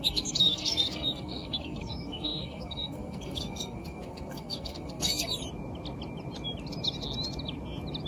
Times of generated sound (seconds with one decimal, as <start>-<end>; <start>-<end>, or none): 0.0-5.4